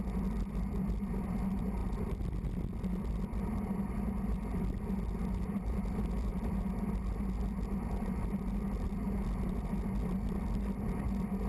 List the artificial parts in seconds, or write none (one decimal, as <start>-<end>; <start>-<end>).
1.8-2.3; 5.2-6.3